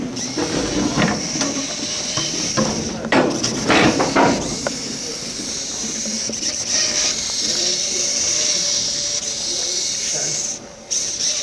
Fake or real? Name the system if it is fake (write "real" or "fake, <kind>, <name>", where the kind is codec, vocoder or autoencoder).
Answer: fake, vocoder, BigVGAN v2